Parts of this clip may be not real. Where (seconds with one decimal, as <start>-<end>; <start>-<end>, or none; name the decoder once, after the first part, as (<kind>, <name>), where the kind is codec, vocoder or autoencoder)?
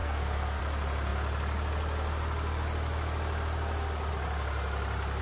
0.0-0.6 (codec, SNAC)